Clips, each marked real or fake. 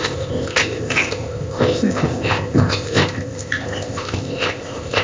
fake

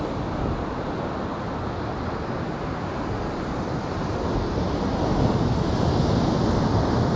real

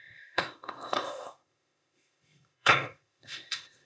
fake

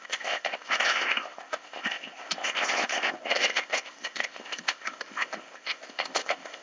fake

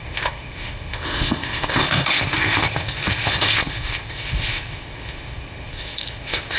fake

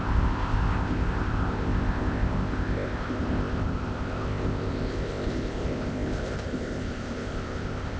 fake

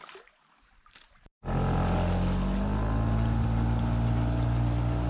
real